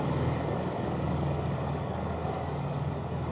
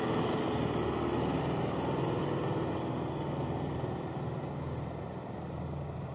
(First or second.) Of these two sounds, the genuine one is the second